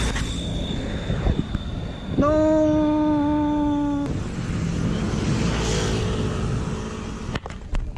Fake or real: real